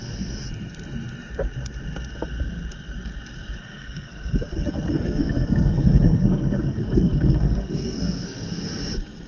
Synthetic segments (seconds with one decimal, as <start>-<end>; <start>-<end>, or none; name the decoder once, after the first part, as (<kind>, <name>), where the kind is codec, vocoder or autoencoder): 3.6-8.5 (codec, SNAC)